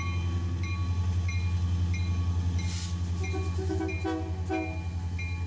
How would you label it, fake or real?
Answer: real